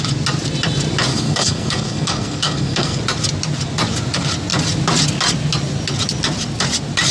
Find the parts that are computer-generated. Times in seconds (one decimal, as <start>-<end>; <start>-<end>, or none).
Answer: 1.1-3.0